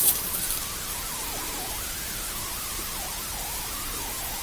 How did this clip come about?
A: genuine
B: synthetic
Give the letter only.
A